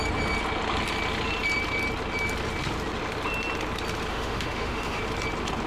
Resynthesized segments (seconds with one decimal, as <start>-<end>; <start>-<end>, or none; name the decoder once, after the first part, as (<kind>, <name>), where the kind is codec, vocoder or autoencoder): 4.1-5.0 (autoencoder, DAC-VAE)

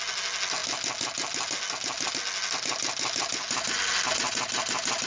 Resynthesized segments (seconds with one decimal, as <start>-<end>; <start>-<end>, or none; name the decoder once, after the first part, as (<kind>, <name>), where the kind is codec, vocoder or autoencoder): none

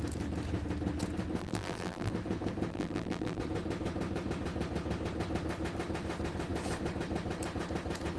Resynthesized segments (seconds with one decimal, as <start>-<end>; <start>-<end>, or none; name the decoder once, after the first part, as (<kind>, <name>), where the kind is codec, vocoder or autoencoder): 1.4-2.1 (vocoder, BigVGAN v2); 2.7-3.4

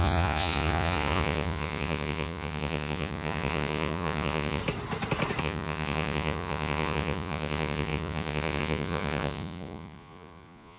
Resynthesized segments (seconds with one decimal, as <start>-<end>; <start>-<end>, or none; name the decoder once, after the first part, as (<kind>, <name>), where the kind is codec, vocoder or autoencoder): 0.0-4.6 (vocoder, Vocos); 5.4-10.8